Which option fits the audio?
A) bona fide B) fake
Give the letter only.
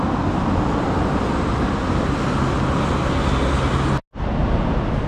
A